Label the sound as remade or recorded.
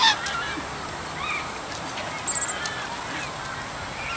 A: recorded